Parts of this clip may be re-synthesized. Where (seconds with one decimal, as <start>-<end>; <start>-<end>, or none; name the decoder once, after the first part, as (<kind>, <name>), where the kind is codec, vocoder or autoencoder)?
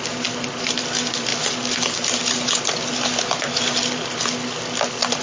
none